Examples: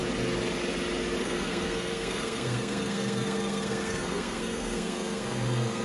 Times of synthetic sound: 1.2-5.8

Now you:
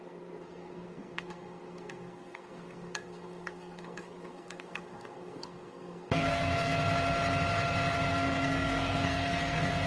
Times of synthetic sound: 0.0-6.7; 8.1-9.9